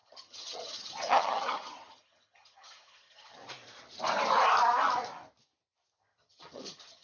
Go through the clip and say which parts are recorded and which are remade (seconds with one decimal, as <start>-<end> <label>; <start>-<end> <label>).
0.0-3.4 remade; 3.4-6.0 recorded; 6.0-7.0 remade